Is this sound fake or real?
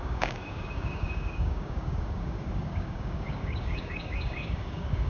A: fake